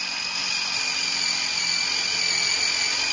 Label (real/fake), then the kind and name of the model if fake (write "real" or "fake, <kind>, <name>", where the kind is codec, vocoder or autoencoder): real